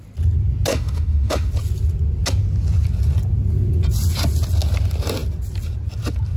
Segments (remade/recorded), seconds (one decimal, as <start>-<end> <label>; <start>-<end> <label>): 0.0-0.7 recorded; 0.7-1.5 remade; 1.5-6.4 recorded